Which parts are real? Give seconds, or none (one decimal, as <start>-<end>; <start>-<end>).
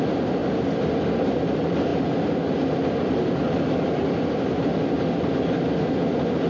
0.0-6.5